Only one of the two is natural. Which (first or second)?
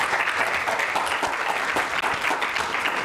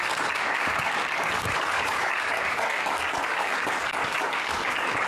first